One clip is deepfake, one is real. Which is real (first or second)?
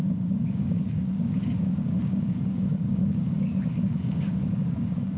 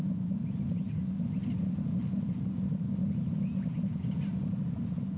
second